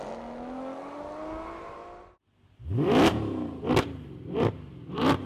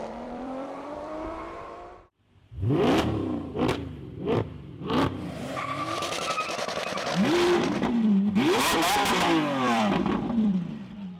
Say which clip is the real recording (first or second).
first